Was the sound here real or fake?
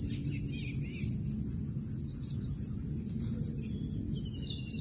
real